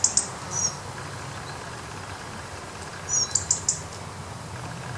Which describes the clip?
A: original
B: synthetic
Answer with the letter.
A